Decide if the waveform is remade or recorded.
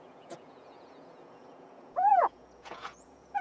remade